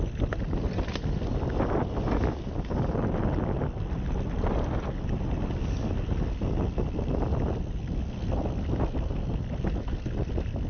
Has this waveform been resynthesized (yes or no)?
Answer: no